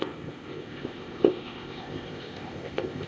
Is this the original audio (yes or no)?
no